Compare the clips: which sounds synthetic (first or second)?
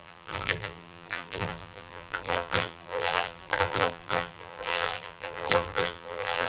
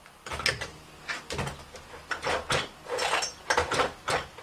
first